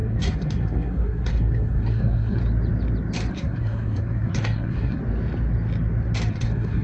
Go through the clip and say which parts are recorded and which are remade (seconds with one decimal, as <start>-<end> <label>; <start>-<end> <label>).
0.0-2.4 remade; 2.4-3.3 recorded; 3.3-5.0 remade; 5.0-6.3 recorded; 6.3-6.8 remade